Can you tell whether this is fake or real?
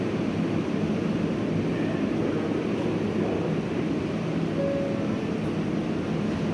real